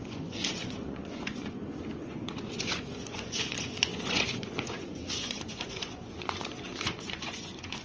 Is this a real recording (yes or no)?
no